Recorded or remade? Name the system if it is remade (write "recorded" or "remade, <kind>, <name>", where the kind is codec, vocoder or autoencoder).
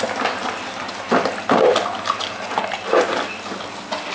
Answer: recorded